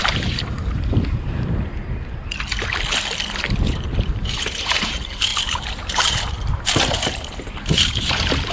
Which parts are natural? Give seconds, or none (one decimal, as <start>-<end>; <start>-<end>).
1.8-3.6

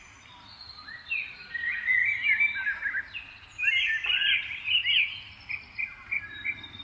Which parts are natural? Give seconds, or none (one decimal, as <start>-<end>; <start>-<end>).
2.0-3.7; 4.8-5.4

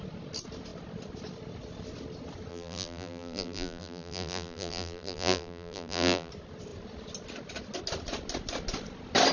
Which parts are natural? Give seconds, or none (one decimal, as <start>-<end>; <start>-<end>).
0.0-2.5; 6.3-9.3

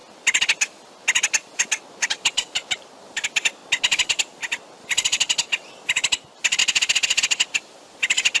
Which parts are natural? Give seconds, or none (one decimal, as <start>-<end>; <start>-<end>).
0.0-2.6; 3.6-5.7